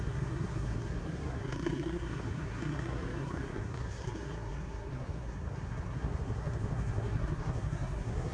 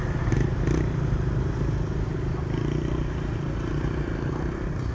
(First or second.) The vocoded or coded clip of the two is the first